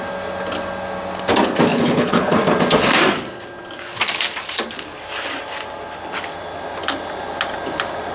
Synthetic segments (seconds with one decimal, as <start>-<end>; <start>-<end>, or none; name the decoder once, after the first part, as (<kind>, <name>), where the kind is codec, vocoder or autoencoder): 1.7-2.4 (codec, HILCodec)